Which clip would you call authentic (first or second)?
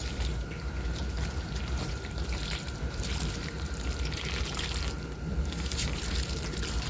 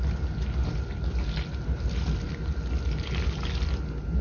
second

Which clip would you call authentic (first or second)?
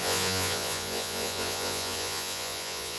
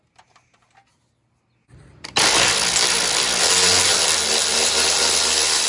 second